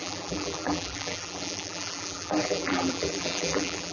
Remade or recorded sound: remade